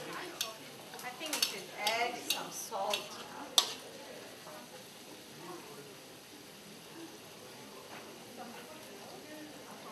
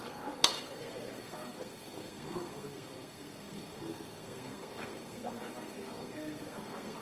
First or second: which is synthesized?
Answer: second